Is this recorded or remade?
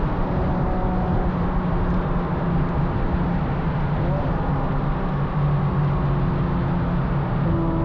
recorded